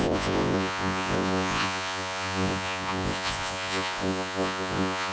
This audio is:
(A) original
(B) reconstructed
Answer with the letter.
B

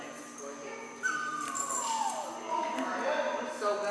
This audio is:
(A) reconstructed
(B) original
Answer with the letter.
B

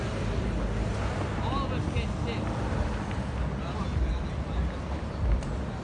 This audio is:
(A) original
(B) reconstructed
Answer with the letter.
A